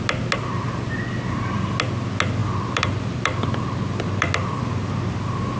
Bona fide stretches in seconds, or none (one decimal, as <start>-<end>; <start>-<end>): 0.0-2.4; 4.3-5.6